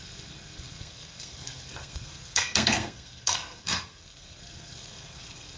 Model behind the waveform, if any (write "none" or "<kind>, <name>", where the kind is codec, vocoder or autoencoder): codec, SNAC